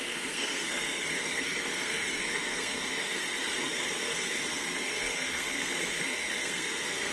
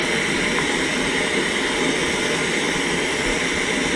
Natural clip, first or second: second